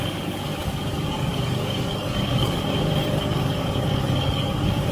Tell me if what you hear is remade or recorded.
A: remade